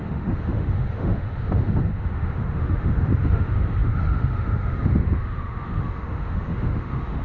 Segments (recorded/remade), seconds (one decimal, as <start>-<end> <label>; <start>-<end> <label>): 0.0-7.2 remade